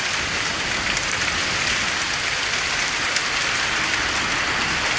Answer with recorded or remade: recorded